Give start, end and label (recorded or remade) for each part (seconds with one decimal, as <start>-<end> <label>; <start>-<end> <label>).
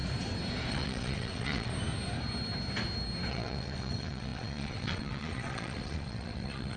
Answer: 0.0-0.7 recorded; 0.7-1.7 remade; 1.7-3.3 recorded; 3.3-6.8 remade